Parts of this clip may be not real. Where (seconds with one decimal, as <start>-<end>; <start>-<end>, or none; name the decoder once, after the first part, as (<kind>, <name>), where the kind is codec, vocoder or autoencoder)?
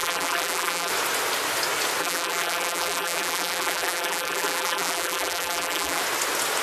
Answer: 0.0-0.9 (vocoder, BigVGAN v2); 2.0-6.0